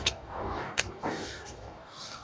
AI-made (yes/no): yes